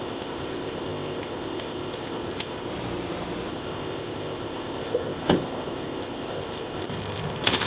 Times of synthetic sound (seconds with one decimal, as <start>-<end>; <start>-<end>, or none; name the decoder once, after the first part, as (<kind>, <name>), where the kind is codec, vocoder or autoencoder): 0.0-2.7 (codec, ZipCodec); 3.5-7.7